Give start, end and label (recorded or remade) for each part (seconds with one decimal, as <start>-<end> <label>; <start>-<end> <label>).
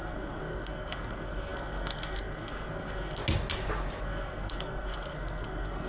0.0-3.2 remade; 3.2-4.0 recorded; 4.0-5.9 remade